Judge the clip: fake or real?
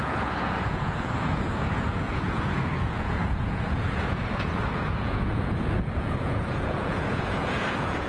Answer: fake